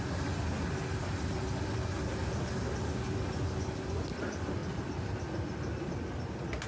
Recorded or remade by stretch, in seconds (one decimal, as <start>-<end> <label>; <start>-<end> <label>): 0.0-6.7 recorded